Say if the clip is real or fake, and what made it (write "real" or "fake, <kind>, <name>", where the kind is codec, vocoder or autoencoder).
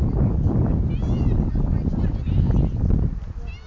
real